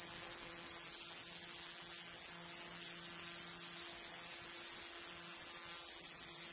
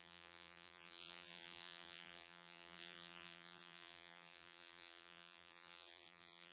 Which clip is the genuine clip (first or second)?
first